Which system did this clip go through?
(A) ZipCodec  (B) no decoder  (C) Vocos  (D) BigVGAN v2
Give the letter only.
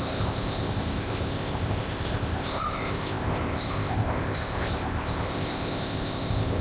A